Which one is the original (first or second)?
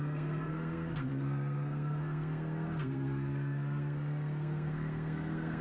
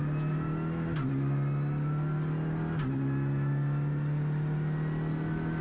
second